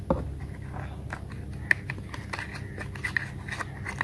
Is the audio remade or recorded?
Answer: recorded